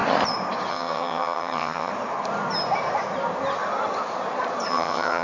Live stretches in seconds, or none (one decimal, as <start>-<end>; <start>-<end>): 0.0-0.7; 1.9-4.7